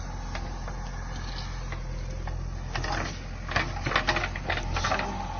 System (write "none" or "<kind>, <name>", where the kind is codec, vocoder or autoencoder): none